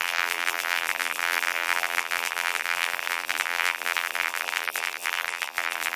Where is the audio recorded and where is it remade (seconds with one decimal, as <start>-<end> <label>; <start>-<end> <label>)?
0.0-6.0 remade